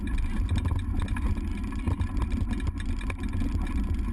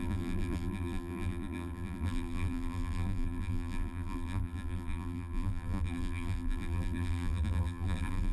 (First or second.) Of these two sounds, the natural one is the first